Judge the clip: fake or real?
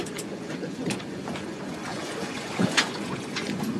fake